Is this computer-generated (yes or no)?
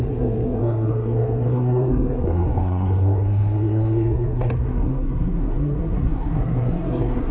yes